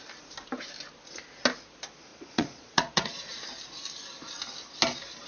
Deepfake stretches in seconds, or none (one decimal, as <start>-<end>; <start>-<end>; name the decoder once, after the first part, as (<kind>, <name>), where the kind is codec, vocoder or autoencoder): 2.1-3.3 (vocoder, Vocos)